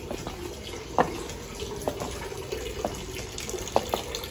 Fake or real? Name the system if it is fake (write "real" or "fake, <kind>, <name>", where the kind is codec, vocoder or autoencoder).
real